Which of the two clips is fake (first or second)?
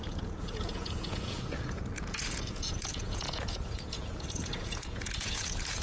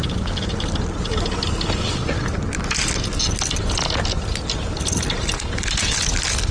first